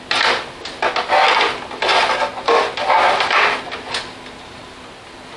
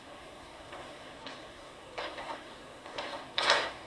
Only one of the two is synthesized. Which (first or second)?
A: second